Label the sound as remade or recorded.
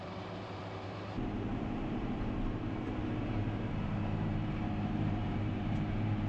remade